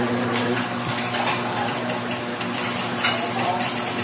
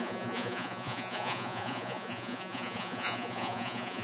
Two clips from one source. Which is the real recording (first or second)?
first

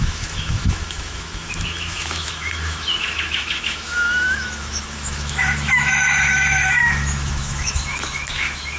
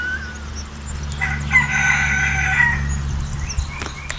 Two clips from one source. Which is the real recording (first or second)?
second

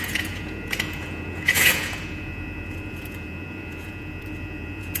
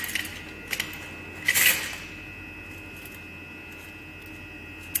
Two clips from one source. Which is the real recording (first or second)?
second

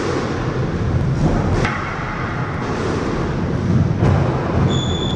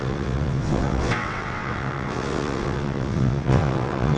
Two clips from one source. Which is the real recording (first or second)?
first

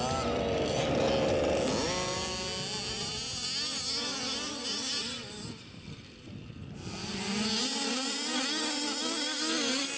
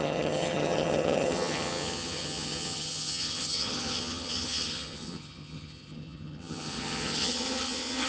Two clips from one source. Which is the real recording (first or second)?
first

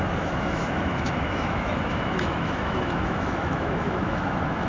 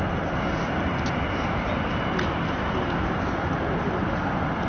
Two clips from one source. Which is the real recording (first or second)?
second